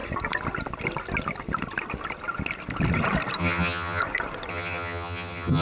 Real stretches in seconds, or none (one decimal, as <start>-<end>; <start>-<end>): 0.0-3.4; 4.0-4.5